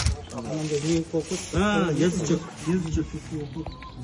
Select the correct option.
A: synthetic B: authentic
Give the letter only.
B